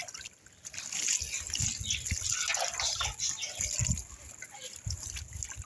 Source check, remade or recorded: recorded